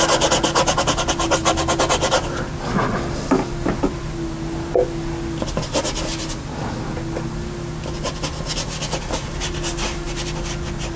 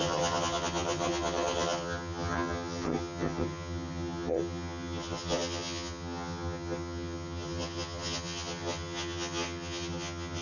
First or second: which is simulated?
second